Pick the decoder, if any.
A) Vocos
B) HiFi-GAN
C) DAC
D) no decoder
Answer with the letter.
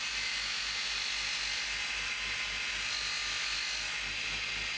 D